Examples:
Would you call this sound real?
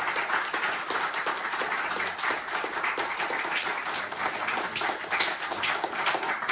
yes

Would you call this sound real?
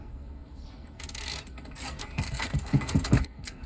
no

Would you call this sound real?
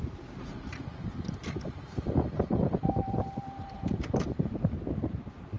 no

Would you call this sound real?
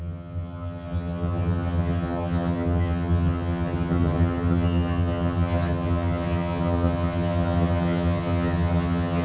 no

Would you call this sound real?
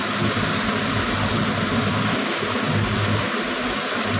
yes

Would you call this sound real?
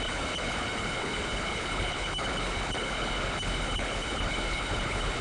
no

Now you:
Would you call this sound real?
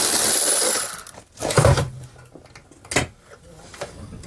yes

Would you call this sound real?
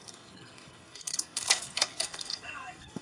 no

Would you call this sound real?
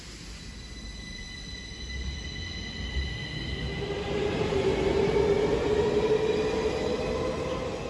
yes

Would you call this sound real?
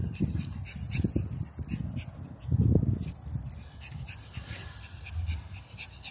yes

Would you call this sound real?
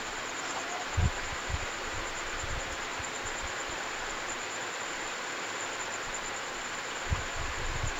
yes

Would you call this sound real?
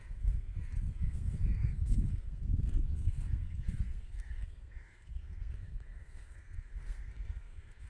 no